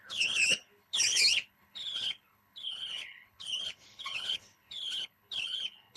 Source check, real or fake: fake